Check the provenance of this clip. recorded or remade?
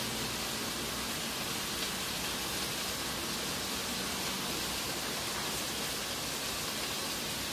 recorded